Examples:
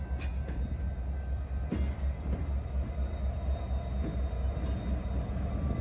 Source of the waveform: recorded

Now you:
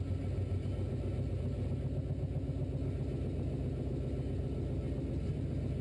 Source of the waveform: recorded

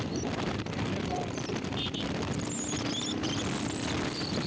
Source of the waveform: recorded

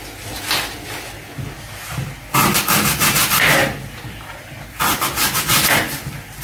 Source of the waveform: recorded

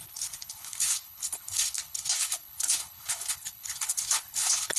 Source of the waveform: remade